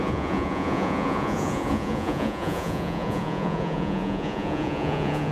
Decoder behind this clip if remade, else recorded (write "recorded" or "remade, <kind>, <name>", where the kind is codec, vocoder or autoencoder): remade, vocoder, Vocos